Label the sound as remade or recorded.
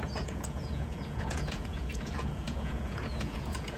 remade